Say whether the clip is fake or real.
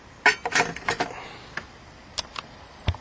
real